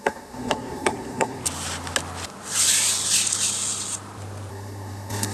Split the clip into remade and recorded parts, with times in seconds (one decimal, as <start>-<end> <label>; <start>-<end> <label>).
0.0-1.4 remade; 1.4-4.5 recorded; 4.5-5.3 remade